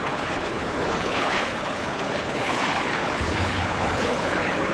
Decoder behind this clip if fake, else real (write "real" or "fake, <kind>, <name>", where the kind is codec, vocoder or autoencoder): fake, codec, HILCodec